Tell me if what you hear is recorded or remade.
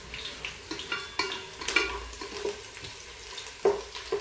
recorded